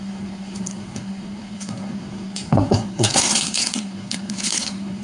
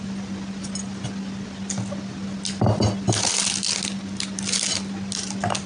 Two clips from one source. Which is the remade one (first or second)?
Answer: first